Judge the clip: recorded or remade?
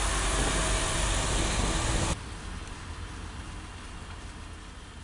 recorded